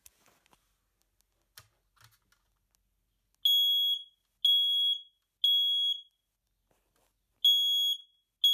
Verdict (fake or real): real